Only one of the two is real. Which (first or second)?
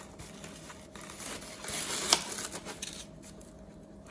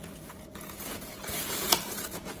first